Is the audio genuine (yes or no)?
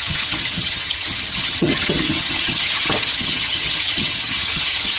no